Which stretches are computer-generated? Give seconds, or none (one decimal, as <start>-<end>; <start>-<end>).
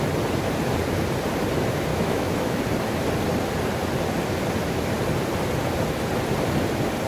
1.9-2.6